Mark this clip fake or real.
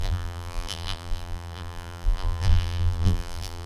fake